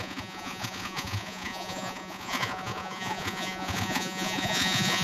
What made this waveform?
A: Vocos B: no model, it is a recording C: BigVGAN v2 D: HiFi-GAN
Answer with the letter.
A